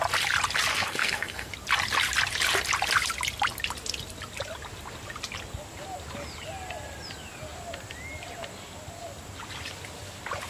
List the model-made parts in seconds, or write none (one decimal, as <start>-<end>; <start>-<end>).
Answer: 0.7-1.5